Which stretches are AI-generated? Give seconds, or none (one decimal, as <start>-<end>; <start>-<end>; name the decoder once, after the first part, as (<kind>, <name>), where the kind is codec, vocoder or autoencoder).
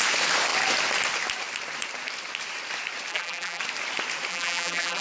3.1-3.6 (vocoder, BigVGAN v2); 4.3-5.0